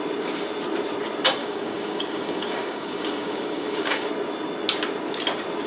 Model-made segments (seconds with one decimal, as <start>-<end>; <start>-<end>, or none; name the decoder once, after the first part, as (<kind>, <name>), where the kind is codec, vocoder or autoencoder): 1.4-4.1 (codec, DAC)